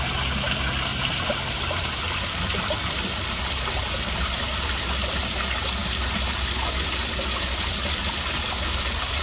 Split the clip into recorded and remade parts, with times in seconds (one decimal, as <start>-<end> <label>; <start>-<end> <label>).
0.0-0.9 recorded; 0.9-5.2 remade; 5.2-9.2 recorded